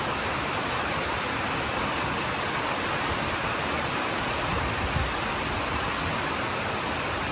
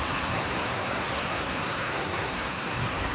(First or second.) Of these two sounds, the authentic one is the first